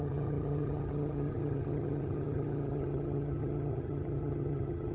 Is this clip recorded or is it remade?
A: remade